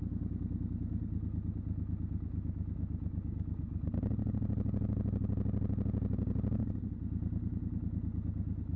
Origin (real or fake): real